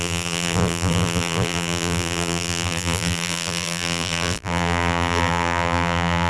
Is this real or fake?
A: fake